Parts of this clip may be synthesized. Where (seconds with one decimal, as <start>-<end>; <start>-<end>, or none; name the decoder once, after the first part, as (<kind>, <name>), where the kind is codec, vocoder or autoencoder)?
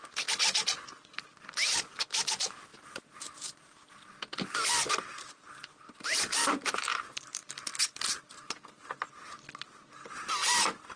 none